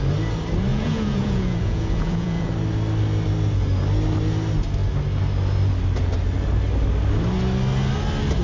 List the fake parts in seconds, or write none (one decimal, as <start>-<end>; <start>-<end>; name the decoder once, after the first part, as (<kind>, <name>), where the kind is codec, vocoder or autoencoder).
0.7-2.5 (vocoder, Vocos)